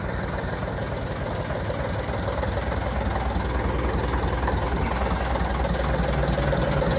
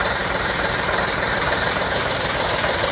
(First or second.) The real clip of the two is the first